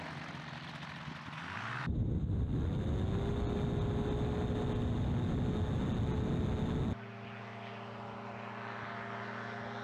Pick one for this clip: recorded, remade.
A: recorded